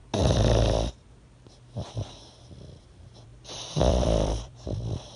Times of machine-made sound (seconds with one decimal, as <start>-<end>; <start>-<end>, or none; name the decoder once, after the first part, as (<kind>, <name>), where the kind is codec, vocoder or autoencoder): 2.8-3.3 (vocoder, BigVGAN v2); 3.9-5.2